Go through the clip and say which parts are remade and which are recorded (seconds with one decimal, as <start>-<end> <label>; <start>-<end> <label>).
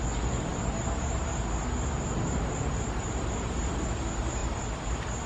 0.0-5.3 recorded